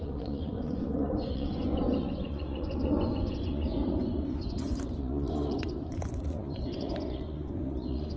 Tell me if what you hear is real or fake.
fake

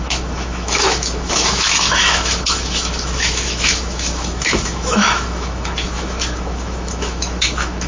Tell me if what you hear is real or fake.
fake